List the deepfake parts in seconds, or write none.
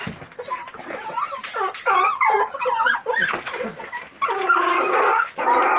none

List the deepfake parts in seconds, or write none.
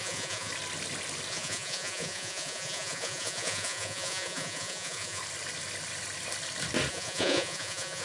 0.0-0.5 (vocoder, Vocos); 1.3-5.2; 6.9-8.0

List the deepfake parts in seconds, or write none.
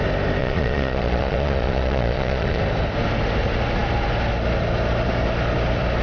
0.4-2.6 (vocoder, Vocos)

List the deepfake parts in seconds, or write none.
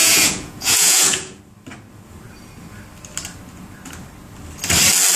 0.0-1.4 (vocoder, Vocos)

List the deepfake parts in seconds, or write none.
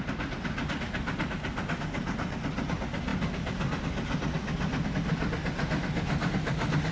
none